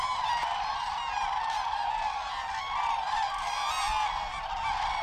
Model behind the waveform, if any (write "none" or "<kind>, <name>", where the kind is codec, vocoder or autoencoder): none